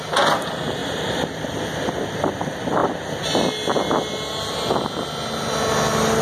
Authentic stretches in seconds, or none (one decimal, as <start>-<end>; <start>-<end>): 0.0-0.8; 1.9-6.2